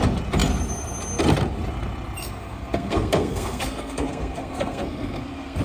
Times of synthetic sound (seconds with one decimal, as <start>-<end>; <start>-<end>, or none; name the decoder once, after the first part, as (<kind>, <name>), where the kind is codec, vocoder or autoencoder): 2.2-5.6 (codec, SNAC)